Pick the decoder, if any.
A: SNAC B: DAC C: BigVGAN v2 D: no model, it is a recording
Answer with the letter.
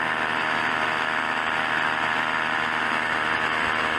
D